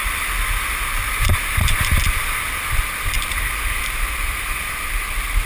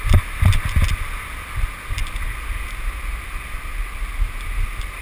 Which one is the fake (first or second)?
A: first